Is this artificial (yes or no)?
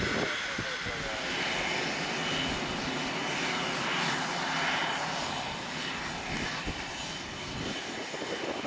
no